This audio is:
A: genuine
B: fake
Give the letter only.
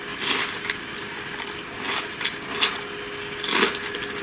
A